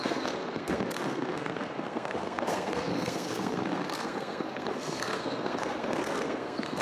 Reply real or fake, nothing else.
fake